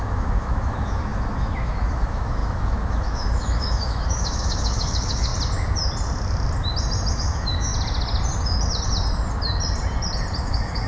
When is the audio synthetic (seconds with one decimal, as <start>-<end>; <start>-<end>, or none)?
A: 0.0-5.3; 7.1-7.7; 10.4-10.9